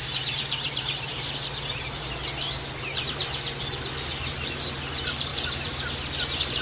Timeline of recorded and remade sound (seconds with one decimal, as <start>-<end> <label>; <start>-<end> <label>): 0.0-3.2 remade; 3.2-3.7 recorded; 3.7-6.6 remade